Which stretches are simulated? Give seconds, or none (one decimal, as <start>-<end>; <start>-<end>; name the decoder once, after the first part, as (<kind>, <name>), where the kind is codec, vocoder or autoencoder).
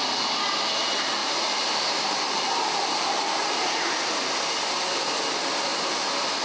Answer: 1.2-4.1 (vocoder, BigVGAN v2); 5.7-6.4